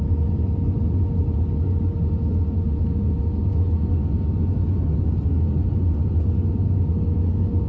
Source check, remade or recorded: recorded